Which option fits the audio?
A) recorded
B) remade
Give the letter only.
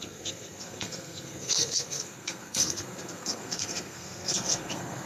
B